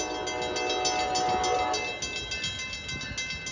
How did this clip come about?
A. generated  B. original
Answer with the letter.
B